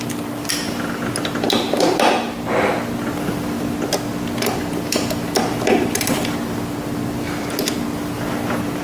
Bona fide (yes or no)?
yes